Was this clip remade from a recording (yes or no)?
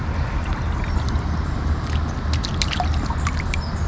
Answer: no